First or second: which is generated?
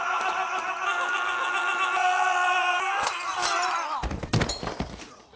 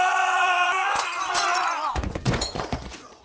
second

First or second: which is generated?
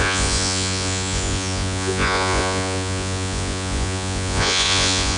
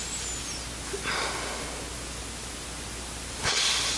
first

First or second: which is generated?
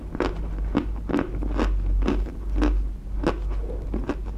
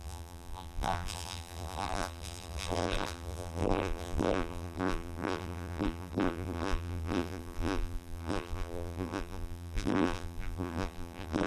second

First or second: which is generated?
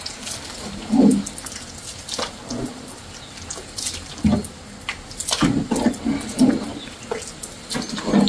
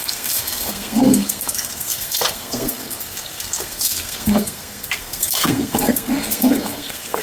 second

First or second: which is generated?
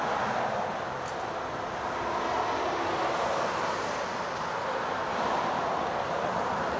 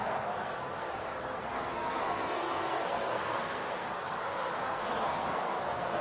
second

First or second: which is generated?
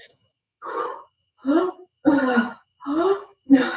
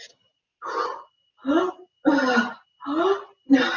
first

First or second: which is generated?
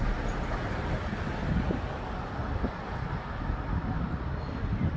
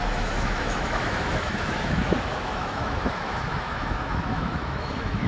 second